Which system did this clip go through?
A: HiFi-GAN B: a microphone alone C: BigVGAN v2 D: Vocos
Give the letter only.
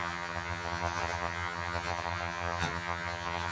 A